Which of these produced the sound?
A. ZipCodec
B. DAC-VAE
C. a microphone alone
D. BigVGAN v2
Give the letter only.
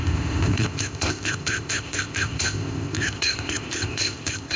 A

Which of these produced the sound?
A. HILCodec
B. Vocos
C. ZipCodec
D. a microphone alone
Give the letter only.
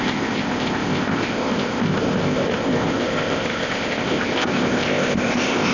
C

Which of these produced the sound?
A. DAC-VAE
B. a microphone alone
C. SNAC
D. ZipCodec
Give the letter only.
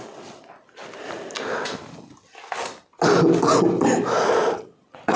B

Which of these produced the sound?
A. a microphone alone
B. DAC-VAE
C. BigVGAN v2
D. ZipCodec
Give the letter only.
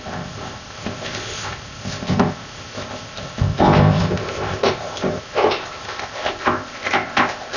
D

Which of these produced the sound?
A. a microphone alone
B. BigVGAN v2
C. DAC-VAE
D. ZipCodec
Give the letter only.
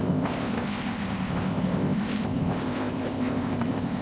D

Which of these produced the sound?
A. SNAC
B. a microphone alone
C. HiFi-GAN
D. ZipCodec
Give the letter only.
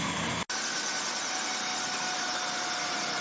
B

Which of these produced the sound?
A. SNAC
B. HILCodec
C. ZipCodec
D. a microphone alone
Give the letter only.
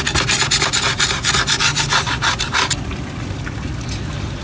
D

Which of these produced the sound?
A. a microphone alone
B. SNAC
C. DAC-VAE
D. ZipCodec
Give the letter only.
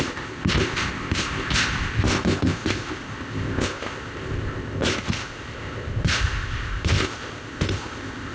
D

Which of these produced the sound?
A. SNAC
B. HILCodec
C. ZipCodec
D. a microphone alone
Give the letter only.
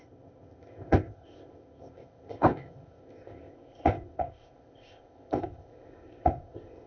C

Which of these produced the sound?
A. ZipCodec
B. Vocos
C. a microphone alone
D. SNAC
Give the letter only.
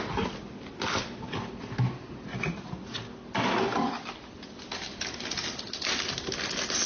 C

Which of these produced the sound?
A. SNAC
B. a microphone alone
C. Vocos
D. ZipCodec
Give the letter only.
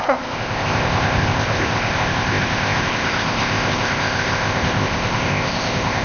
D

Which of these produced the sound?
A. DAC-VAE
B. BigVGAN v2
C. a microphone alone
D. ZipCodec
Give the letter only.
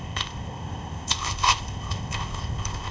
D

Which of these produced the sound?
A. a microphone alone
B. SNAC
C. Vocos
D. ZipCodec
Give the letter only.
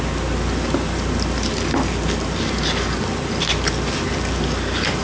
A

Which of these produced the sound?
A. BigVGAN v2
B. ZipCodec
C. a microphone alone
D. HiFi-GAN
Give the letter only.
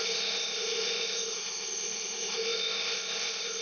B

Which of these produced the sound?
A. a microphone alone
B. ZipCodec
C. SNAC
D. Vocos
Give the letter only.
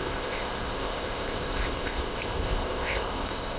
B